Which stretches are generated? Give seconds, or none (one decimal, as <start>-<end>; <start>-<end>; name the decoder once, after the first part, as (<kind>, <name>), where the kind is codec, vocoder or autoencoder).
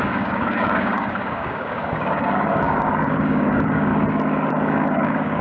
0.0-3.9 (codec, DAC); 4.5-5.4